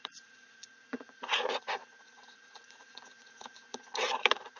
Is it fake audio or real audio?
fake